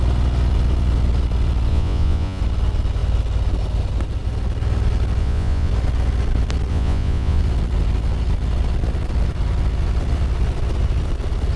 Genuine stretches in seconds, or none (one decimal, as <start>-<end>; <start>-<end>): 0.0-1.7; 2.4-5.2; 5.7-6.7; 7.4-11.6

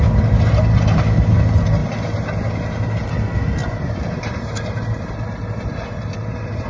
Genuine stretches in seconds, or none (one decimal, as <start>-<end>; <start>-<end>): 0.0-6.7

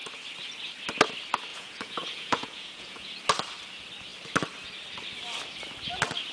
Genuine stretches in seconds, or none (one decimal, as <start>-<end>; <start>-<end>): 0.0-1.5; 3.1-6.3

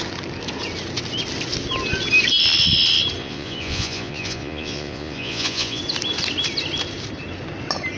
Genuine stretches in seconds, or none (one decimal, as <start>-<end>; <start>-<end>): 0.0-3.2; 5.8-8.0